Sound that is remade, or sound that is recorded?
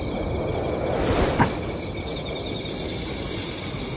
recorded